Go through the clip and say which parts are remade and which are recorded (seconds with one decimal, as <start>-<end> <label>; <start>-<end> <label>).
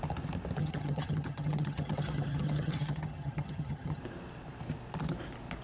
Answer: 0.0-0.6 recorded; 0.6-4.0 remade; 4.0-5.6 recorded